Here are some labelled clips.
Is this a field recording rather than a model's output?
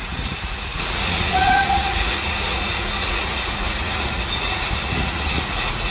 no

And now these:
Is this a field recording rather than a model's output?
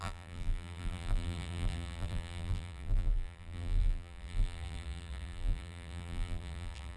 no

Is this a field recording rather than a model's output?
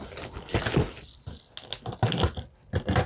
yes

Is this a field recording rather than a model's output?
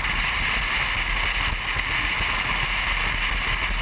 yes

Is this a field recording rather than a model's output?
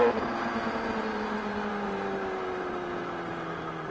no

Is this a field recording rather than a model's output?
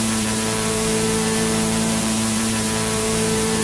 no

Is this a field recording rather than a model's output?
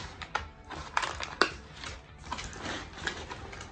yes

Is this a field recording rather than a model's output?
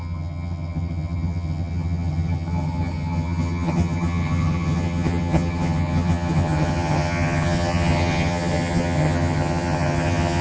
no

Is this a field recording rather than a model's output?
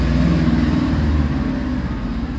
yes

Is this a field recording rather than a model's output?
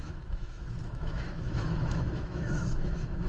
no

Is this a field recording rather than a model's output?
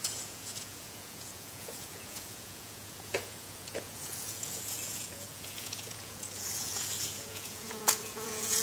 no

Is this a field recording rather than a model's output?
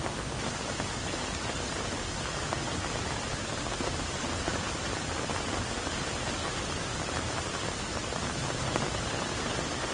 yes